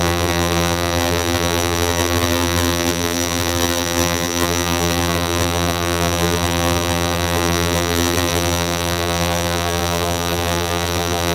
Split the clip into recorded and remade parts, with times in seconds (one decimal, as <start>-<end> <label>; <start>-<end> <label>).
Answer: 0.0-11.3 remade